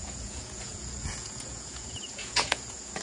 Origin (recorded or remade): remade